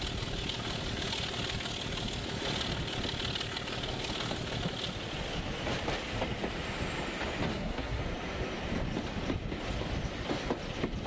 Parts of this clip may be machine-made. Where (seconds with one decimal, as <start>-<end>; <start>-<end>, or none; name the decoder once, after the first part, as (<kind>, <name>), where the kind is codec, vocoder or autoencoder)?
7.5-8.0 (codec, SNAC)